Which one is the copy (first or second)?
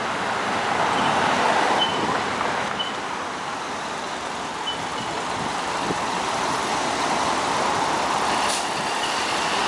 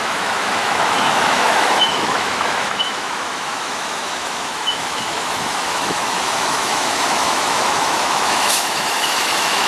second